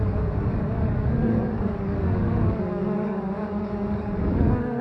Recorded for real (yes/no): no